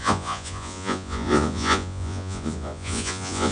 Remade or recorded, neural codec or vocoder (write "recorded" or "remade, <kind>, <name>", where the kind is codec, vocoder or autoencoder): remade, vocoder, Vocos